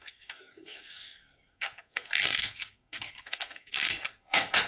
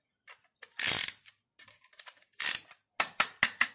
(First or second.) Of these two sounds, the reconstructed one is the first